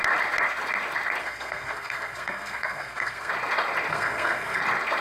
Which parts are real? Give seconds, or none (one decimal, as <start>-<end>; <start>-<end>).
0.0-1.2; 3.3-3.9; 4.6-5.0